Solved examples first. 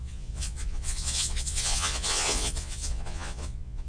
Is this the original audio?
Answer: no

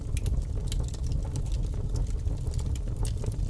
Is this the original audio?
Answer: yes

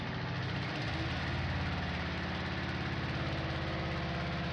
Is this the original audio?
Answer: yes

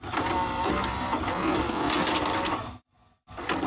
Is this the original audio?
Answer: yes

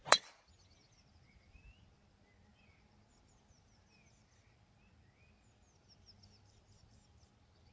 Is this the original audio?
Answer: yes